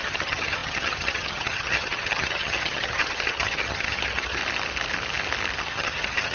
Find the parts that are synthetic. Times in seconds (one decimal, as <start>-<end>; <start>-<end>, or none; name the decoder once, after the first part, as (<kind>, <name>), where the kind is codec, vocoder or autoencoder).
0.0-4.4 (vocoder, HiFi-GAN); 5.6-6.3